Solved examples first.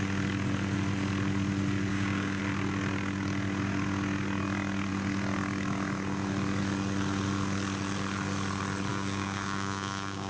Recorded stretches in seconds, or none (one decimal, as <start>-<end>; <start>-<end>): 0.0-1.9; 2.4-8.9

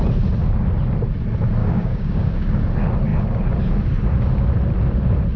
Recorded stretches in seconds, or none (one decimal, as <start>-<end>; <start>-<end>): 0.0-1.6; 2.6-5.4

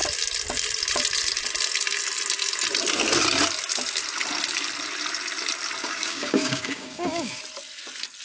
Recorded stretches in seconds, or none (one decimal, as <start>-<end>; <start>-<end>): 0.0-5.8; 7.4-8.2